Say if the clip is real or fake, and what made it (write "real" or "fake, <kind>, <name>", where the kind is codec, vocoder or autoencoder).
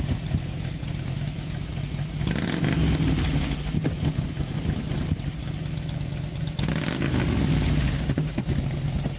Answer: real